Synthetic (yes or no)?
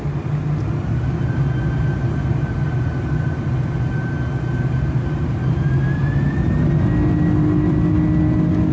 no